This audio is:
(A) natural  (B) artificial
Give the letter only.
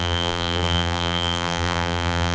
B